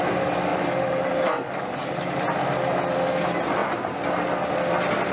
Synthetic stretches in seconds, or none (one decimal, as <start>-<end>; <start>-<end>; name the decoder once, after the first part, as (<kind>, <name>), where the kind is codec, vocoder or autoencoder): 0.5-1.1 (vocoder, BigVGAN v2)